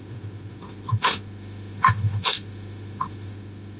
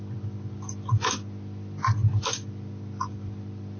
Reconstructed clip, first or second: first